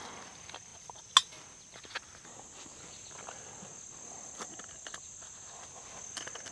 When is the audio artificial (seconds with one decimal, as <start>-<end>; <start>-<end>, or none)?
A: none